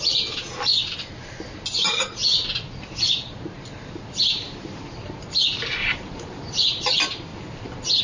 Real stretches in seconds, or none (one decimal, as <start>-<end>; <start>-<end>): 0.0-5.8; 6.6-8.0